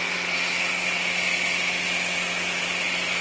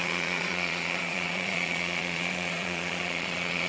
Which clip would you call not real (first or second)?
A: second